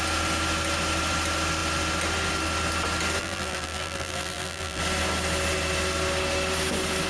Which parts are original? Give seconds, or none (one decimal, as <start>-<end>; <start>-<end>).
0.0-3.2; 4.8-7.1